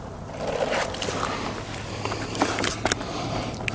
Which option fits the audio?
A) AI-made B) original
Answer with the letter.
B